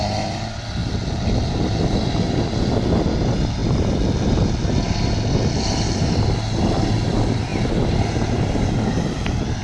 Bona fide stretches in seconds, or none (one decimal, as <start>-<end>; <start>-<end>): 0.8-3.2; 3.6-4.6